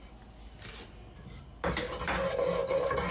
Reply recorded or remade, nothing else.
recorded